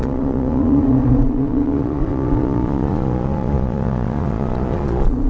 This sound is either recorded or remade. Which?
remade